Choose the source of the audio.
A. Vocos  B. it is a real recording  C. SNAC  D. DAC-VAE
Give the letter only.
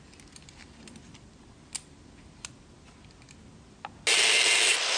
B